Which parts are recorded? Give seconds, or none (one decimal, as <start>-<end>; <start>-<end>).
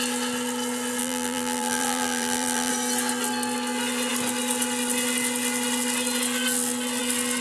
0.0-1.0; 2.7-7.4